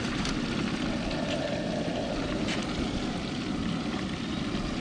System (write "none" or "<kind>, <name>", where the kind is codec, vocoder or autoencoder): none